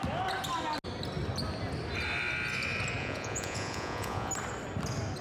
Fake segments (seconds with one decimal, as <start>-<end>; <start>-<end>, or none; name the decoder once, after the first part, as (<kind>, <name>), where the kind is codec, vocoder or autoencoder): 3.0-4.3 (vocoder, Vocos)